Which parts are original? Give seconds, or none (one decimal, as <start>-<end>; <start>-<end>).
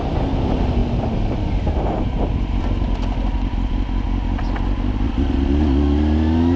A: 0.0-6.6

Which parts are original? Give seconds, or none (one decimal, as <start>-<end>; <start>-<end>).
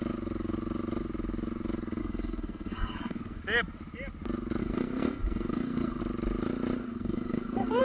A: 0.0-2.0; 3.4-4.6; 6.0-6.8